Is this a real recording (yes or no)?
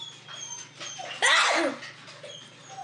yes